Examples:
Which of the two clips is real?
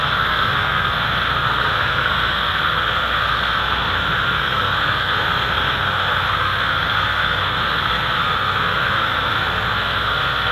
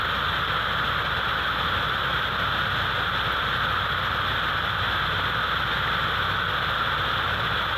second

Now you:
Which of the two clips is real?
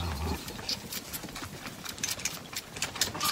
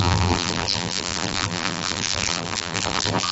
first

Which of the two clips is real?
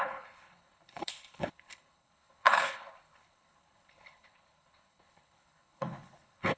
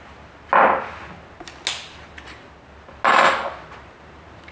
second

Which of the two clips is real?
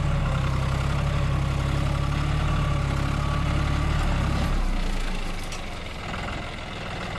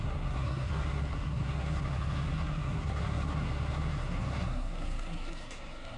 first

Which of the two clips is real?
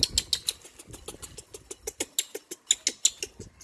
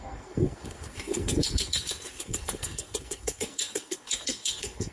first